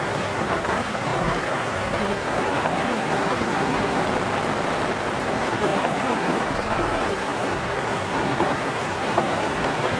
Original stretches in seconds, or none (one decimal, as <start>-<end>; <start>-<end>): 4.0-5.2